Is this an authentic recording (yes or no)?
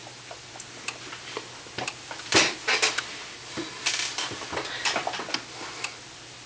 yes